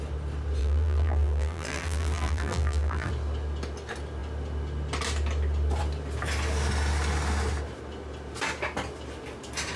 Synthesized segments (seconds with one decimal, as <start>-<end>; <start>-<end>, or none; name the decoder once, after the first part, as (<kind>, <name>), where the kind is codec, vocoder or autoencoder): 0.6-3.1 (vocoder, BigVGAN v2)